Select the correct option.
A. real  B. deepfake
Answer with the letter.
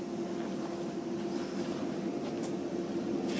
A